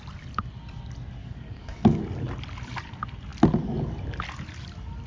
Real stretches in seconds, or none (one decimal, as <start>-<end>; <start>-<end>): 0.0-1.2; 2.0-5.1